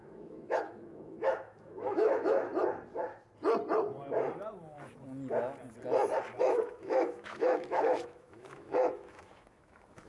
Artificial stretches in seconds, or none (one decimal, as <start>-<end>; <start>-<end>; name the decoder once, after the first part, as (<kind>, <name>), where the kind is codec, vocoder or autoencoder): 0.0-2.5 (autoencoder, DAC-VAE); 6.4-10.1